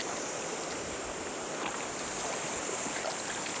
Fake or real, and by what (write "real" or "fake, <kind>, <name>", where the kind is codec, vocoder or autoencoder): real